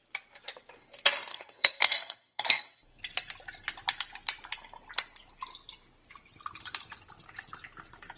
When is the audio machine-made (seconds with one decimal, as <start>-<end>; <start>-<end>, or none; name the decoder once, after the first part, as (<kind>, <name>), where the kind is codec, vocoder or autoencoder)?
1.3-3.0 (codec, SNAC)